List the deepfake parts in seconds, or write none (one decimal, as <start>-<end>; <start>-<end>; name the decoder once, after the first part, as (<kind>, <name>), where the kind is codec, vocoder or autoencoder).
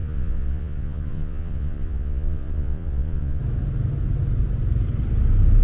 0.0-3.4 (vocoder, Vocos)